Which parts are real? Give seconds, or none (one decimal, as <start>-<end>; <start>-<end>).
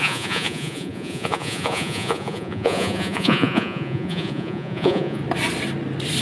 5.2-6.2